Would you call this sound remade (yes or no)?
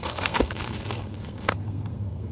yes